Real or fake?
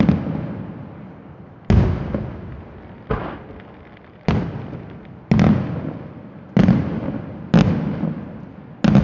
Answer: real